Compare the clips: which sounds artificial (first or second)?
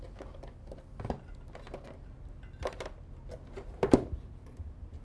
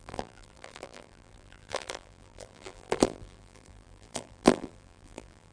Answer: second